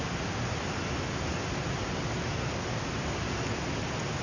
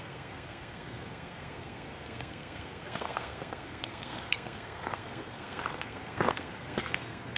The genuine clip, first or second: first